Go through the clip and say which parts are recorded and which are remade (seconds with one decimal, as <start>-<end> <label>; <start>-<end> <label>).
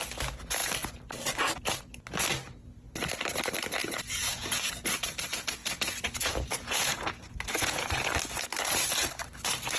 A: 0.0-3.8 recorded; 3.8-4.7 remade; 4.7-5.6 recorded; 5.6-8.1 remade; 8.1-9.8 recorded